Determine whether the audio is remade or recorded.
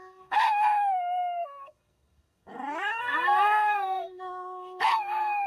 remade